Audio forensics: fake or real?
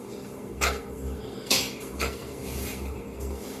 fake